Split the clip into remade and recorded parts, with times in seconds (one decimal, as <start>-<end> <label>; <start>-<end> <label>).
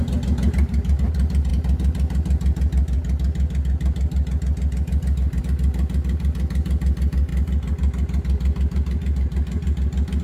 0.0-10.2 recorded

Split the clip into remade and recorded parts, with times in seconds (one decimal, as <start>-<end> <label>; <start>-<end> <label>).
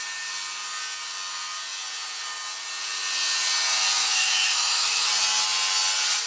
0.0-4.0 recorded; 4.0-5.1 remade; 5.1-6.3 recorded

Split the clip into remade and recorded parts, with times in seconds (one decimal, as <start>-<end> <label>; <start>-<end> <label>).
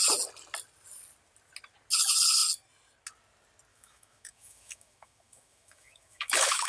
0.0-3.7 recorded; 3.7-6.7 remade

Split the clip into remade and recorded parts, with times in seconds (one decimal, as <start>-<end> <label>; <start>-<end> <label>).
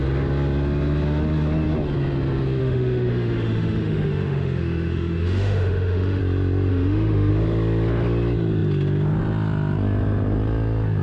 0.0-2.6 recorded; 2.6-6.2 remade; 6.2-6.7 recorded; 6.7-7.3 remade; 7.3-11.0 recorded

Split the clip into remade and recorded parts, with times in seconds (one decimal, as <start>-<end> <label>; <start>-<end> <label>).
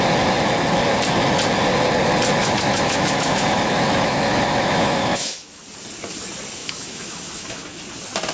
0.0-2.4 recorded; 2.4-5.6 remade; 5.6-6.6 recorded; 6.6-7.7 remade; 7.7-8.3 recorded